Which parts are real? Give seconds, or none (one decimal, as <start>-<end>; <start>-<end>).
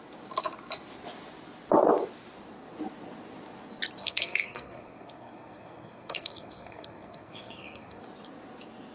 0.0-4.0; 8.0-8.9